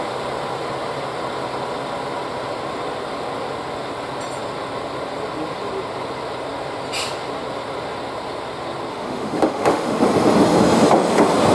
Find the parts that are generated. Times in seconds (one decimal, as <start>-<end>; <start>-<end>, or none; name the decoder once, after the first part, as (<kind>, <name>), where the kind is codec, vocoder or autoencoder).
8.9-10.0 (autoencoder, DAC-VAE)